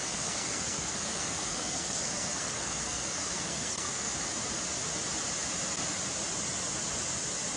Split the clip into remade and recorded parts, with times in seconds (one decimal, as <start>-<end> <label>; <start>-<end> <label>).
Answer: 0.0-4.1 remade; 4.1-7.6 recorded